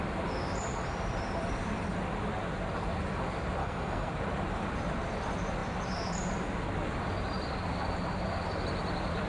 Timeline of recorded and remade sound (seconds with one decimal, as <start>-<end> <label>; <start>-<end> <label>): 0.0-3.6 recorded; 3.6-4.1 remade; 4.1-9.3 recorded